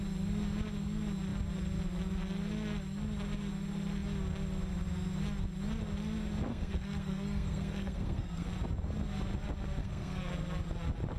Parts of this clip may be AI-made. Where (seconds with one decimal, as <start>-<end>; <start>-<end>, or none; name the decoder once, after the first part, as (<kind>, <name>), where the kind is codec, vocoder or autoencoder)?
6.5-8.5 (codec, SNAC); 9.8-10.3